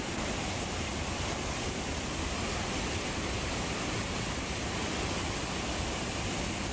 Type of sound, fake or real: real